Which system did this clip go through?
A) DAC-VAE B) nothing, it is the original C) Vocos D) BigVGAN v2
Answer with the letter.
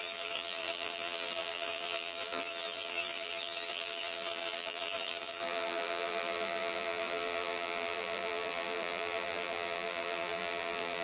D